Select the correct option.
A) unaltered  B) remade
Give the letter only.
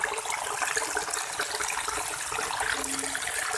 A